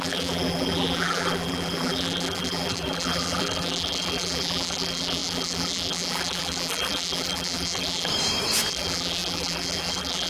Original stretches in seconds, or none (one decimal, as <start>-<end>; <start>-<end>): 8.1-8.7